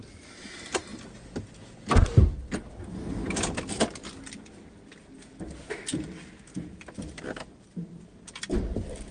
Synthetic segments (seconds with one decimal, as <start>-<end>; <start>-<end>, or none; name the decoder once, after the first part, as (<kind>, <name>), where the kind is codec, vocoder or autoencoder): none